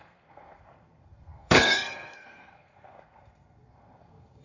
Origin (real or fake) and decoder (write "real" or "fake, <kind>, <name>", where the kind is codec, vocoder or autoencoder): fake, codec, SNAC